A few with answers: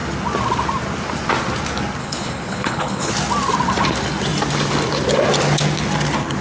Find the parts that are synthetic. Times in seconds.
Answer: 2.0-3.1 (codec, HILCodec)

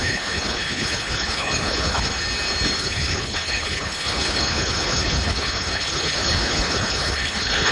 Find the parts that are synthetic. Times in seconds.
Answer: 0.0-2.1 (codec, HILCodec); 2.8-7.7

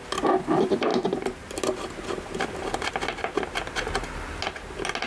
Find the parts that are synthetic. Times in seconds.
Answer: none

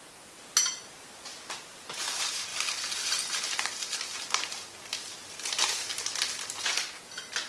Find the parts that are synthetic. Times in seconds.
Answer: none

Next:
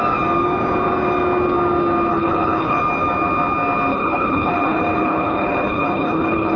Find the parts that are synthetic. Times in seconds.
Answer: 2.1-2.8 (codec, HILCodec); 3.9-6.6

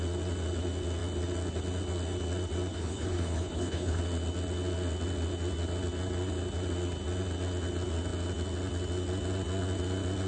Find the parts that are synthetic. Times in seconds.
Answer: 2.7-4.0 (codec, HILCodec)

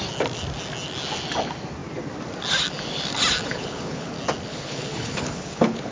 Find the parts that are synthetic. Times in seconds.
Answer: 3.5-4.1 (codec, HILCodec); 4.5-5.9